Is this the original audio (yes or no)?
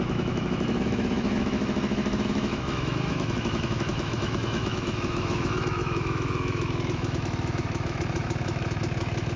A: no